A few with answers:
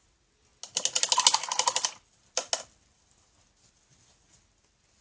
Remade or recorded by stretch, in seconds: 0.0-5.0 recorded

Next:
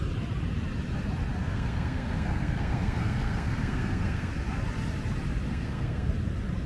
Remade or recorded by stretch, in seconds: 0.0-1.3 recorded; 1.3-4.3 remade; 4.3-5.5 recorded; 5.5-6.1 remade; 6.1-6.7 recorded

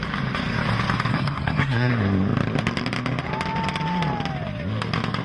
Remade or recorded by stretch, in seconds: 0.0-1.1 recorded; 1.1-1.9 remade; 1.9-5.2 recorded